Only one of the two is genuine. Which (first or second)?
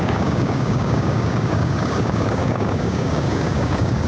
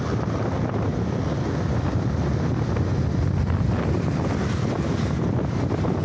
second